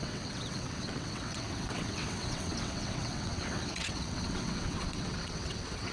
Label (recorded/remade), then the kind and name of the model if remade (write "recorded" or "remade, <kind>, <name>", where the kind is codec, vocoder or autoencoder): remade, vocoder, WaveNeXt